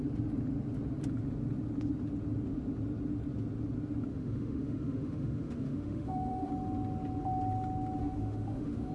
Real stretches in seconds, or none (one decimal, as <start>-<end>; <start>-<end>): 0.0-4.1; 6.5-8.0